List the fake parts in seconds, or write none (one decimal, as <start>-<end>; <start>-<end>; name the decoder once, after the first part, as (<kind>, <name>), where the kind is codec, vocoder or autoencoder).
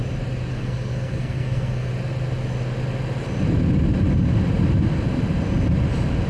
0.5-1.9 (codec, SNAC)